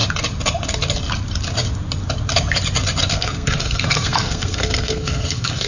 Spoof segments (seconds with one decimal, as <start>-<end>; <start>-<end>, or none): 3.1-5.7